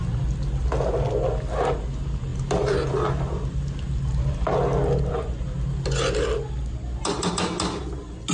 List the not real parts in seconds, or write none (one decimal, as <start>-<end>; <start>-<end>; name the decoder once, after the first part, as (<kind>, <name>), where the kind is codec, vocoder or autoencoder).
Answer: none